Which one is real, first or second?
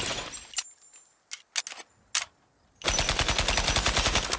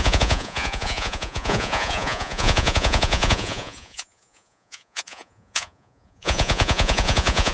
first